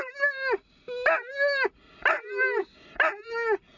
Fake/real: real